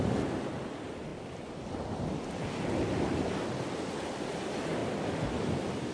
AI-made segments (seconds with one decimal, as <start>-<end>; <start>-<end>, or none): none